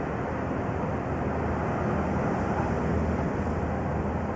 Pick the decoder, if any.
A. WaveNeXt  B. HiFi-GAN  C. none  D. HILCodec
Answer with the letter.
C